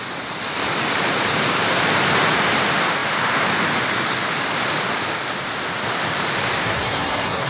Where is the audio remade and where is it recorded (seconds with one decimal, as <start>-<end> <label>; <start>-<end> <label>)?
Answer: 0.0-6.6 recorded; 6.6-7.5 remade